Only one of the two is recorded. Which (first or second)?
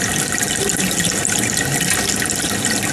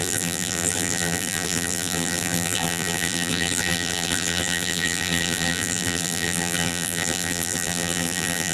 first